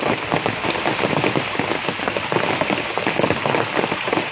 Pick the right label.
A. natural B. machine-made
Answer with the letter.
A